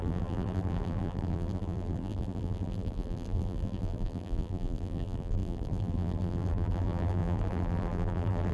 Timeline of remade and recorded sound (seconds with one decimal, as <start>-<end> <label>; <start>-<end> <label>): 0.0-8.5 remade